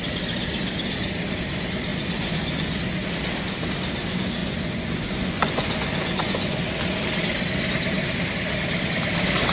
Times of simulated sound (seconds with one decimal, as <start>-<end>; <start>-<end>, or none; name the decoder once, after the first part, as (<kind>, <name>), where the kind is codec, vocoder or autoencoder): 1.9-2.8 (vocoder, Vocos); 4.4-6.7